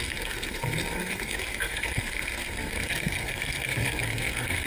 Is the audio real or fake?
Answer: fake